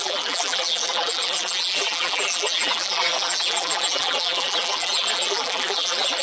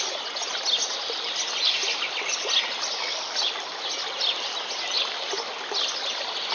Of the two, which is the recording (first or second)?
second